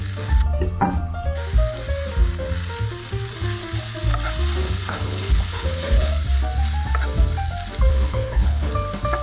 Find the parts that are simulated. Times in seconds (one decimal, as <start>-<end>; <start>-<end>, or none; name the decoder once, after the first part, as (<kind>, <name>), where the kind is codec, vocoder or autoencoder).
4.6-6.1 (codec, HILCodec); 7.9-8.7